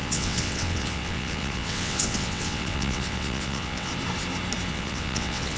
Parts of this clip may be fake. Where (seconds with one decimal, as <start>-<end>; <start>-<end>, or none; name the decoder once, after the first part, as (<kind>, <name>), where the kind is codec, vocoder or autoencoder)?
0.0-3.9 (vocoder, WaveNeXt); 4.7-5.6